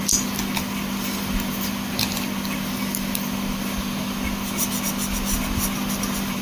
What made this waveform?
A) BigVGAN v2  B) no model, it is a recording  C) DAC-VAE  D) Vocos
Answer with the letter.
B